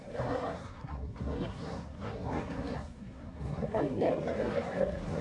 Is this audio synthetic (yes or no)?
yes